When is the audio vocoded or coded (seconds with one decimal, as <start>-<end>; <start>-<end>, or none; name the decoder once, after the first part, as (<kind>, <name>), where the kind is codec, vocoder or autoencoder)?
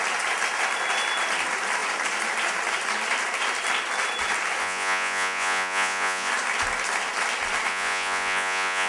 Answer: 4.6-6.3 (vocoder, Vocos); 7.7-8.9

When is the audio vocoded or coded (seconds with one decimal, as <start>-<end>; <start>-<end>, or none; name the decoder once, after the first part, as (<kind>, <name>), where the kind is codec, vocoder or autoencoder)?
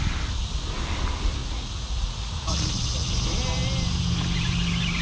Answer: 1.4-3.1 (vocoder, Vocos)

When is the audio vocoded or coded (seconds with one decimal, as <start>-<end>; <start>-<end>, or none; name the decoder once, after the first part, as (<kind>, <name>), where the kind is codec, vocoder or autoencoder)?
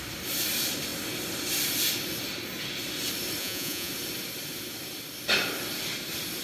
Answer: 3.4-3.9 (vocoder, Vocos)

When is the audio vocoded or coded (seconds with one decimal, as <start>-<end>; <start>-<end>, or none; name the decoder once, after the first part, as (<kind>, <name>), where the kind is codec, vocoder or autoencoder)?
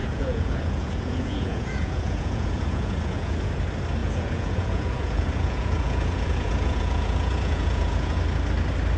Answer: 0.0-3.5 (vocoder, Vocos); 4.0-8.2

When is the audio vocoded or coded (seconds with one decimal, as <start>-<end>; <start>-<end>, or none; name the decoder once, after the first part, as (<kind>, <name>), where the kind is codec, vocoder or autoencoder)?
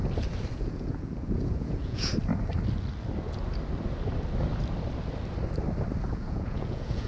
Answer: 0.5-2.1 (vocoder, Vocos); 6.1-7.1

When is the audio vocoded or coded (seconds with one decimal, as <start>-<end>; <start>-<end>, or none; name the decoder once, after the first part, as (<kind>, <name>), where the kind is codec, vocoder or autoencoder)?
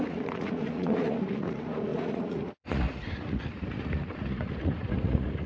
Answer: 0.0-5.5 (vocoder, Vocos)